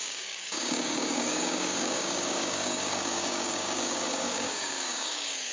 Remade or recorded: remade